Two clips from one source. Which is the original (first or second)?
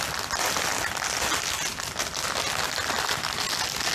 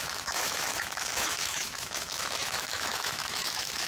first